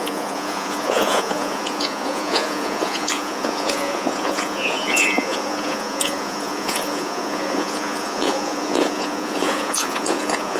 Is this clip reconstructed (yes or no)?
yes